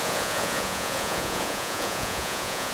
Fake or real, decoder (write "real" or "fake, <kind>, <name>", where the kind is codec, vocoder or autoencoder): fake, vocoder, Vocos